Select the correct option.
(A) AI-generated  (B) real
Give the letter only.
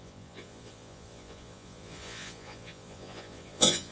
A